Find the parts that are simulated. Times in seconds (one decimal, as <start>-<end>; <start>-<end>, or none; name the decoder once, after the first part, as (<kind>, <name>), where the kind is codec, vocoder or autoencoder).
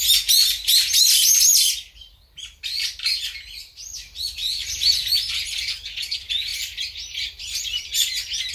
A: 4.4-5.3 (vocoder, BigVGAN v2); 6.5-7.6